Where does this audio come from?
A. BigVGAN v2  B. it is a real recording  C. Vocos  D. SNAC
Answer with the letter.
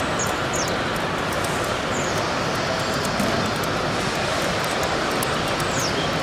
B